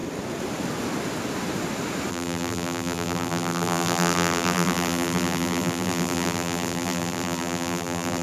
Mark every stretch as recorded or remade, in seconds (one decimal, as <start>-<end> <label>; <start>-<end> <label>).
0.0-2.1 recorded; 2.1-8.2 remade